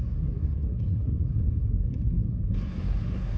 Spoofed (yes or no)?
yes